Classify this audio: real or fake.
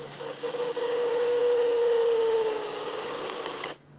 fake